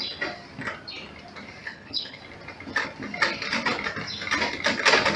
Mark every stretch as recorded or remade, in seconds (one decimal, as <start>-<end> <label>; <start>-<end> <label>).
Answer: 0.0-1.6 recorded; 1.6-2.2 remade; 2.2-5.2 recorded